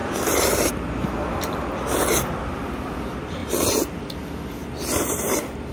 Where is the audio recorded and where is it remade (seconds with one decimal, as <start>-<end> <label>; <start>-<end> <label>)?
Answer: 0.0-0.7 remade; 0.7-3.4 recorded; 3.4-4.1 remade; 4.1-4.6 recorded; 4.6-5.7 remade